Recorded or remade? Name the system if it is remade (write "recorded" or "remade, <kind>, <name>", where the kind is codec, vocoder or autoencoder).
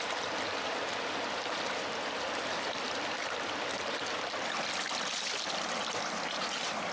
recorded